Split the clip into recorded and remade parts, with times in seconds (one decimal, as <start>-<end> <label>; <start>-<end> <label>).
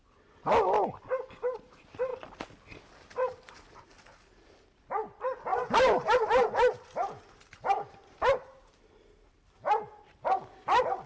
0.0-5.5 recorded; 5.5-8.8 remade; 8.8-11.1 recorded